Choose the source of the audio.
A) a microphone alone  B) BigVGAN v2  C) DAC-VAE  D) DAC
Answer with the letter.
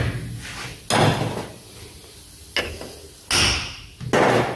A